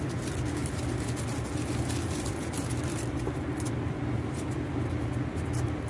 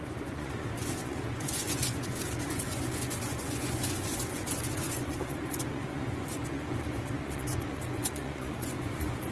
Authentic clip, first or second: first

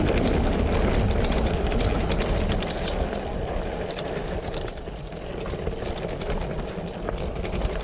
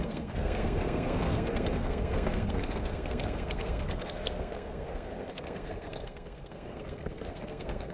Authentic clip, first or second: first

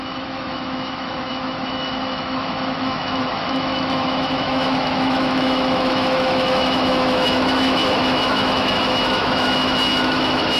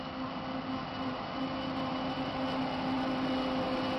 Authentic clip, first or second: second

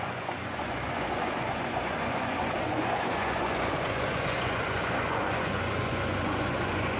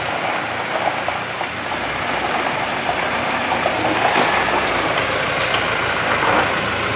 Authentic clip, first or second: second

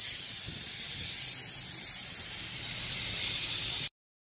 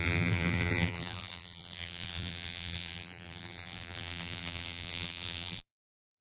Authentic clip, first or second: first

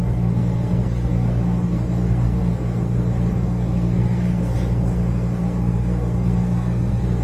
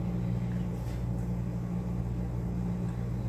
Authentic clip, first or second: second